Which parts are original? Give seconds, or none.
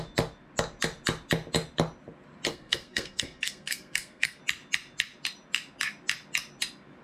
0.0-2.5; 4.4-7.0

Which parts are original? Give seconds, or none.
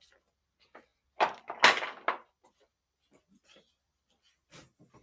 0.0-5.0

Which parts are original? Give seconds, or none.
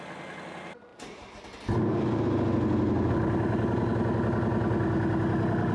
0.0-5.7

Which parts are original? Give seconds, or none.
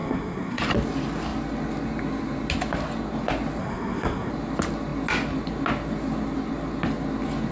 0.6-3.6; 4.3-7.5